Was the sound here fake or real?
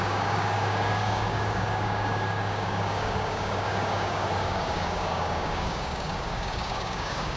fake